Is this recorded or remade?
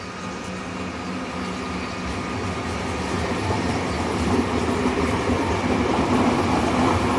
recorded